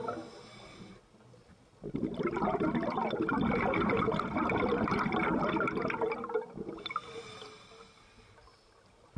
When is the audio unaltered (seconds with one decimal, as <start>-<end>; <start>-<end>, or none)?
0.0-9.2